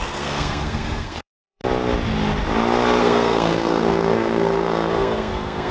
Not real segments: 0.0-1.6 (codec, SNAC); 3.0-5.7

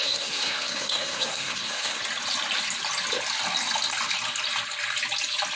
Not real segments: 0.0-2.0 (codec, SNAC)

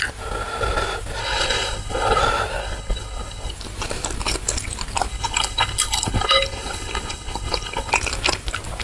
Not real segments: 1.2-2.2 (codec, HILCodec); 2.6-3.5; 5.1-7.9

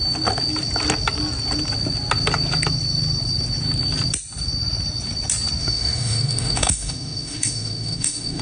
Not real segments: 5.6-8.4 (autoencoder, DAC-VAE)